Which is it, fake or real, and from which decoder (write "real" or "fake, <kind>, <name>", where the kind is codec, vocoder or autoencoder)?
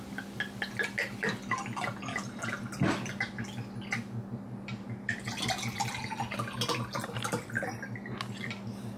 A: real